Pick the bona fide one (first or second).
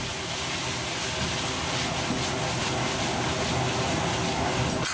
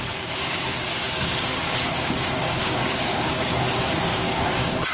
first